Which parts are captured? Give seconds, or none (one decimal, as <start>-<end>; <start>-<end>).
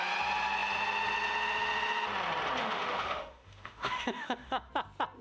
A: 0.0-2.6; 4.7-5.2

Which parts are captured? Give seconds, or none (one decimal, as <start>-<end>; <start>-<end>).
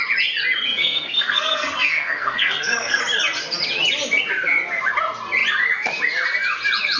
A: 0.0-0.8; 3.0-7.0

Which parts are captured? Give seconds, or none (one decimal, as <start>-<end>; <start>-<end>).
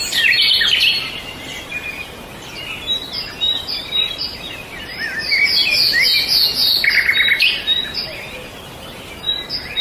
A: 0.0-6.6; 7.5-9.8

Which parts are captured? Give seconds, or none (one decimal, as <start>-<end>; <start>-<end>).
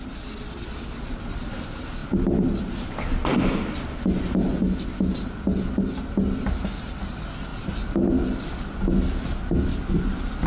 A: 0.0-10.5